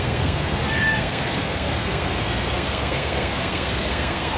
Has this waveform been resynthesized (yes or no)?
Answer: yes